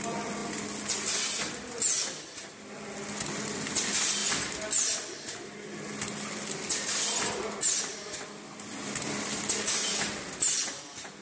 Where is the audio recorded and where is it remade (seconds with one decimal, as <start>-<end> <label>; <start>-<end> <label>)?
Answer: 0.0-11.2 recorded